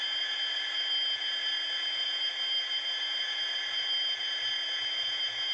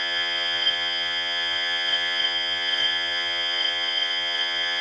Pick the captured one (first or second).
first